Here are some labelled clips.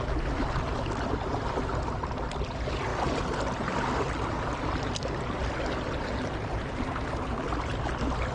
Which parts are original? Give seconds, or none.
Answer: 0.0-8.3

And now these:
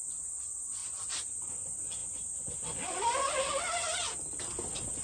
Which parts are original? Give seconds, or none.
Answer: 0.0-5.0